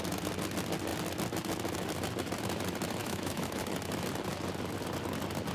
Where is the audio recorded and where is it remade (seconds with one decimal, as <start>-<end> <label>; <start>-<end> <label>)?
0.0-3.0 recorded; 3.0-3.6 remade; 3.6-5.5 recorded